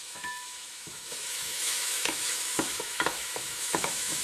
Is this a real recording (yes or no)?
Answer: no